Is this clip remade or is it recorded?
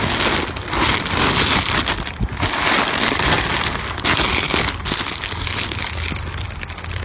recorded